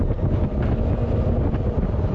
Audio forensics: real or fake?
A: real